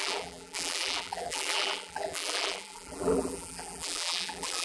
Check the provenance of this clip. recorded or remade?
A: remade